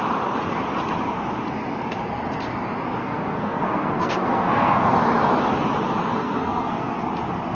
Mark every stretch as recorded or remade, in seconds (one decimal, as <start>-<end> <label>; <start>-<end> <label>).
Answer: 0.0-3.0 recorded; 3.0-5.0 remade; 5.0-6.0 recorded; 6.0-7.0 remade; 7.0-7.5 recorded